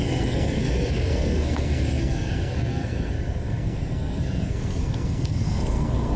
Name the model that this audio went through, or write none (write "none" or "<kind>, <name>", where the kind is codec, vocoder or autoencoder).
codec, SNAC